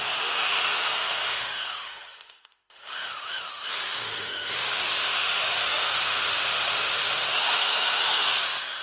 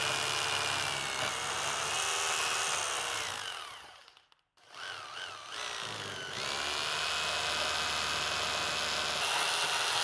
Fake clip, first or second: first